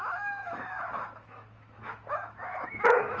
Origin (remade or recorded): remade